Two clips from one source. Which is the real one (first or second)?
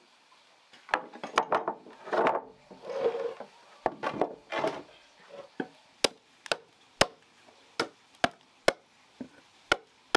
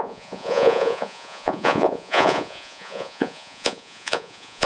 first